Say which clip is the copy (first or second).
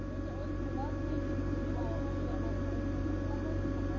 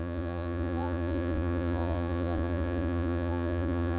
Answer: second